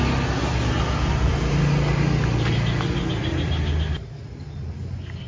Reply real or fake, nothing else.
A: real